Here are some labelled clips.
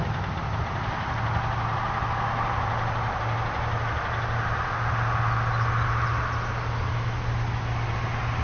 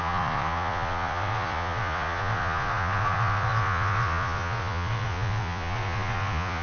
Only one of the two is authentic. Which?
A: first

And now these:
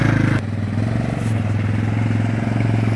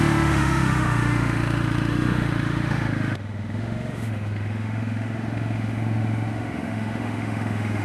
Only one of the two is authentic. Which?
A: first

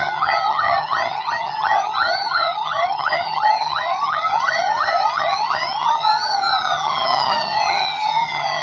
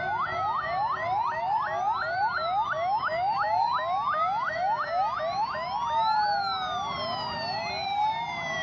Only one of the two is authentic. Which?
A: second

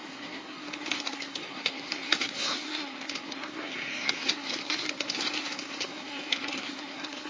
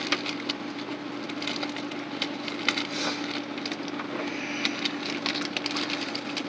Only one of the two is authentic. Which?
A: second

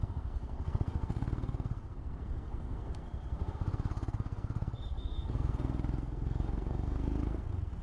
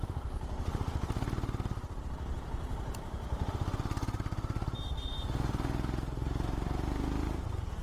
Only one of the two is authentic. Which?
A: second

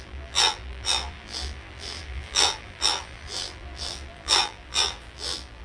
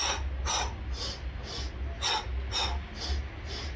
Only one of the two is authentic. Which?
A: second